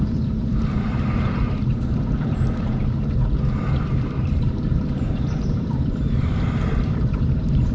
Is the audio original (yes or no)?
no